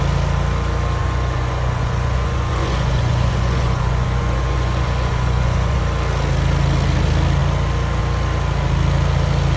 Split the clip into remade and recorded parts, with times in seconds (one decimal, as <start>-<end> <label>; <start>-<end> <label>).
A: 0.0-1.0 recorded; 1.0-5.8 remade; 5.8-9.6 recorded